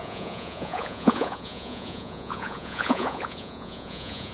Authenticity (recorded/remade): remade